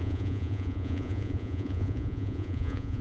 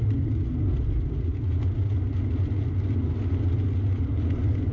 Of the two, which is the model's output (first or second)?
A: first